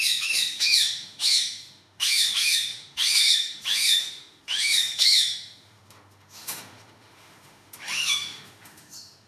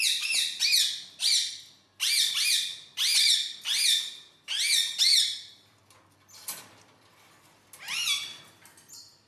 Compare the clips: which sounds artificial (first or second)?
first